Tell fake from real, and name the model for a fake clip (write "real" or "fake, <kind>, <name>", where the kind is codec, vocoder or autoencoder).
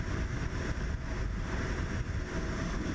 real